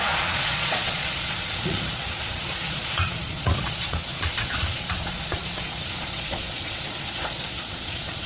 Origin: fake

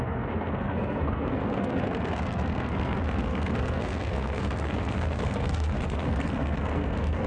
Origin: fake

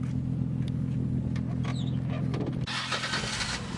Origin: real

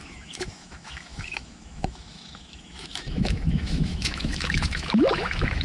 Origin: fake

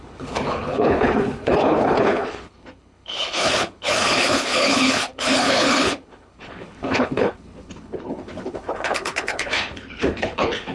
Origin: fake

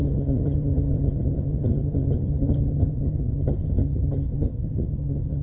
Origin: fake